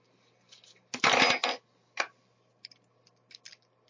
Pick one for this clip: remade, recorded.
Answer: recorded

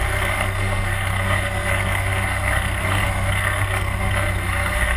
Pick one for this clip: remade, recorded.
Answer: remade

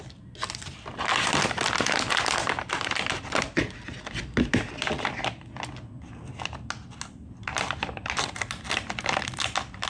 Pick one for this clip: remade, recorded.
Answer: recorded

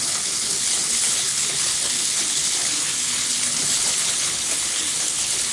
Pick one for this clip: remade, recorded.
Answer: remade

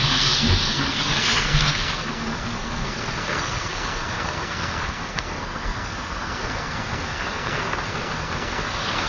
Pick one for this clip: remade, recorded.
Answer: remade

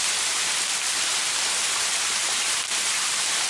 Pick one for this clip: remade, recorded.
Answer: remade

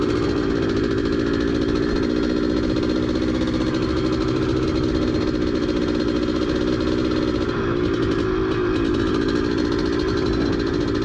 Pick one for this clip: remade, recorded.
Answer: recorded